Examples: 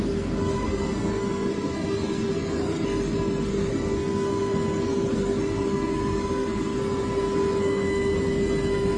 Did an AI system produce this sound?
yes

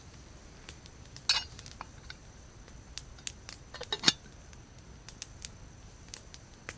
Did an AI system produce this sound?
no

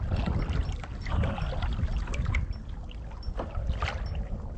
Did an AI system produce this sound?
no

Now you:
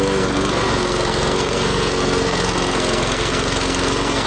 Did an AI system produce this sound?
yes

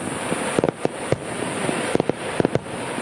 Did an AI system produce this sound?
no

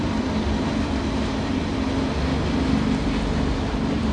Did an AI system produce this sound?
no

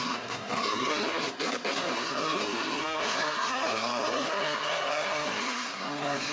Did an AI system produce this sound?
yes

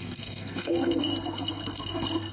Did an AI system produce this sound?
yes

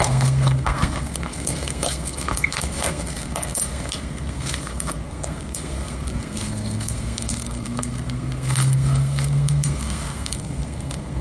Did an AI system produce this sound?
yes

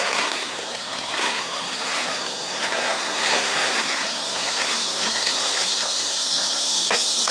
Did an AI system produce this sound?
yes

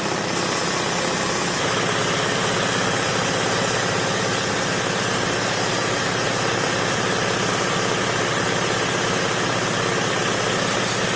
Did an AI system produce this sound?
no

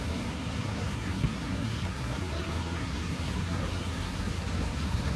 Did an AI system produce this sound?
yes